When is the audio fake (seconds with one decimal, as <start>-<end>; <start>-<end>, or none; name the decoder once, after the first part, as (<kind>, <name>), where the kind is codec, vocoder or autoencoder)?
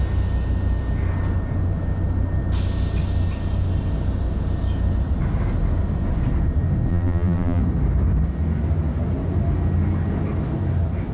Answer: 6.9-7.6 (vocoder, BigVGAN v2)